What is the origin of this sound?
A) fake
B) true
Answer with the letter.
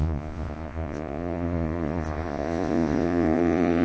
A